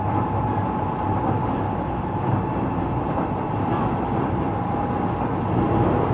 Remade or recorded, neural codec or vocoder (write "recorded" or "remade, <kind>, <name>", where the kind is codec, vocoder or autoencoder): remade, vocoder, BigVGAN v2